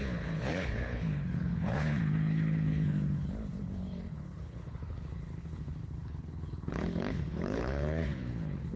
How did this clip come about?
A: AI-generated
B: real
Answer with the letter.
A